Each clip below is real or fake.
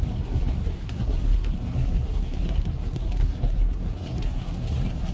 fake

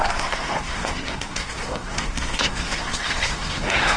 fake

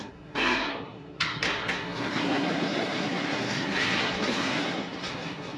fake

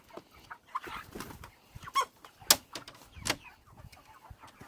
real